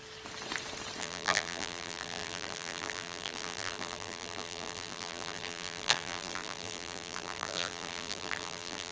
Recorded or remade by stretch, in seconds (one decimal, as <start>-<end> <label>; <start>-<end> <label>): 0.0-1.0 recorded; 1.0-8.9 remade